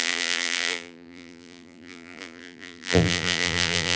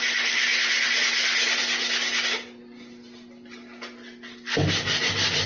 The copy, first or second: first